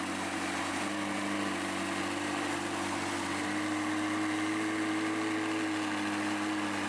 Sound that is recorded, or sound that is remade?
recorded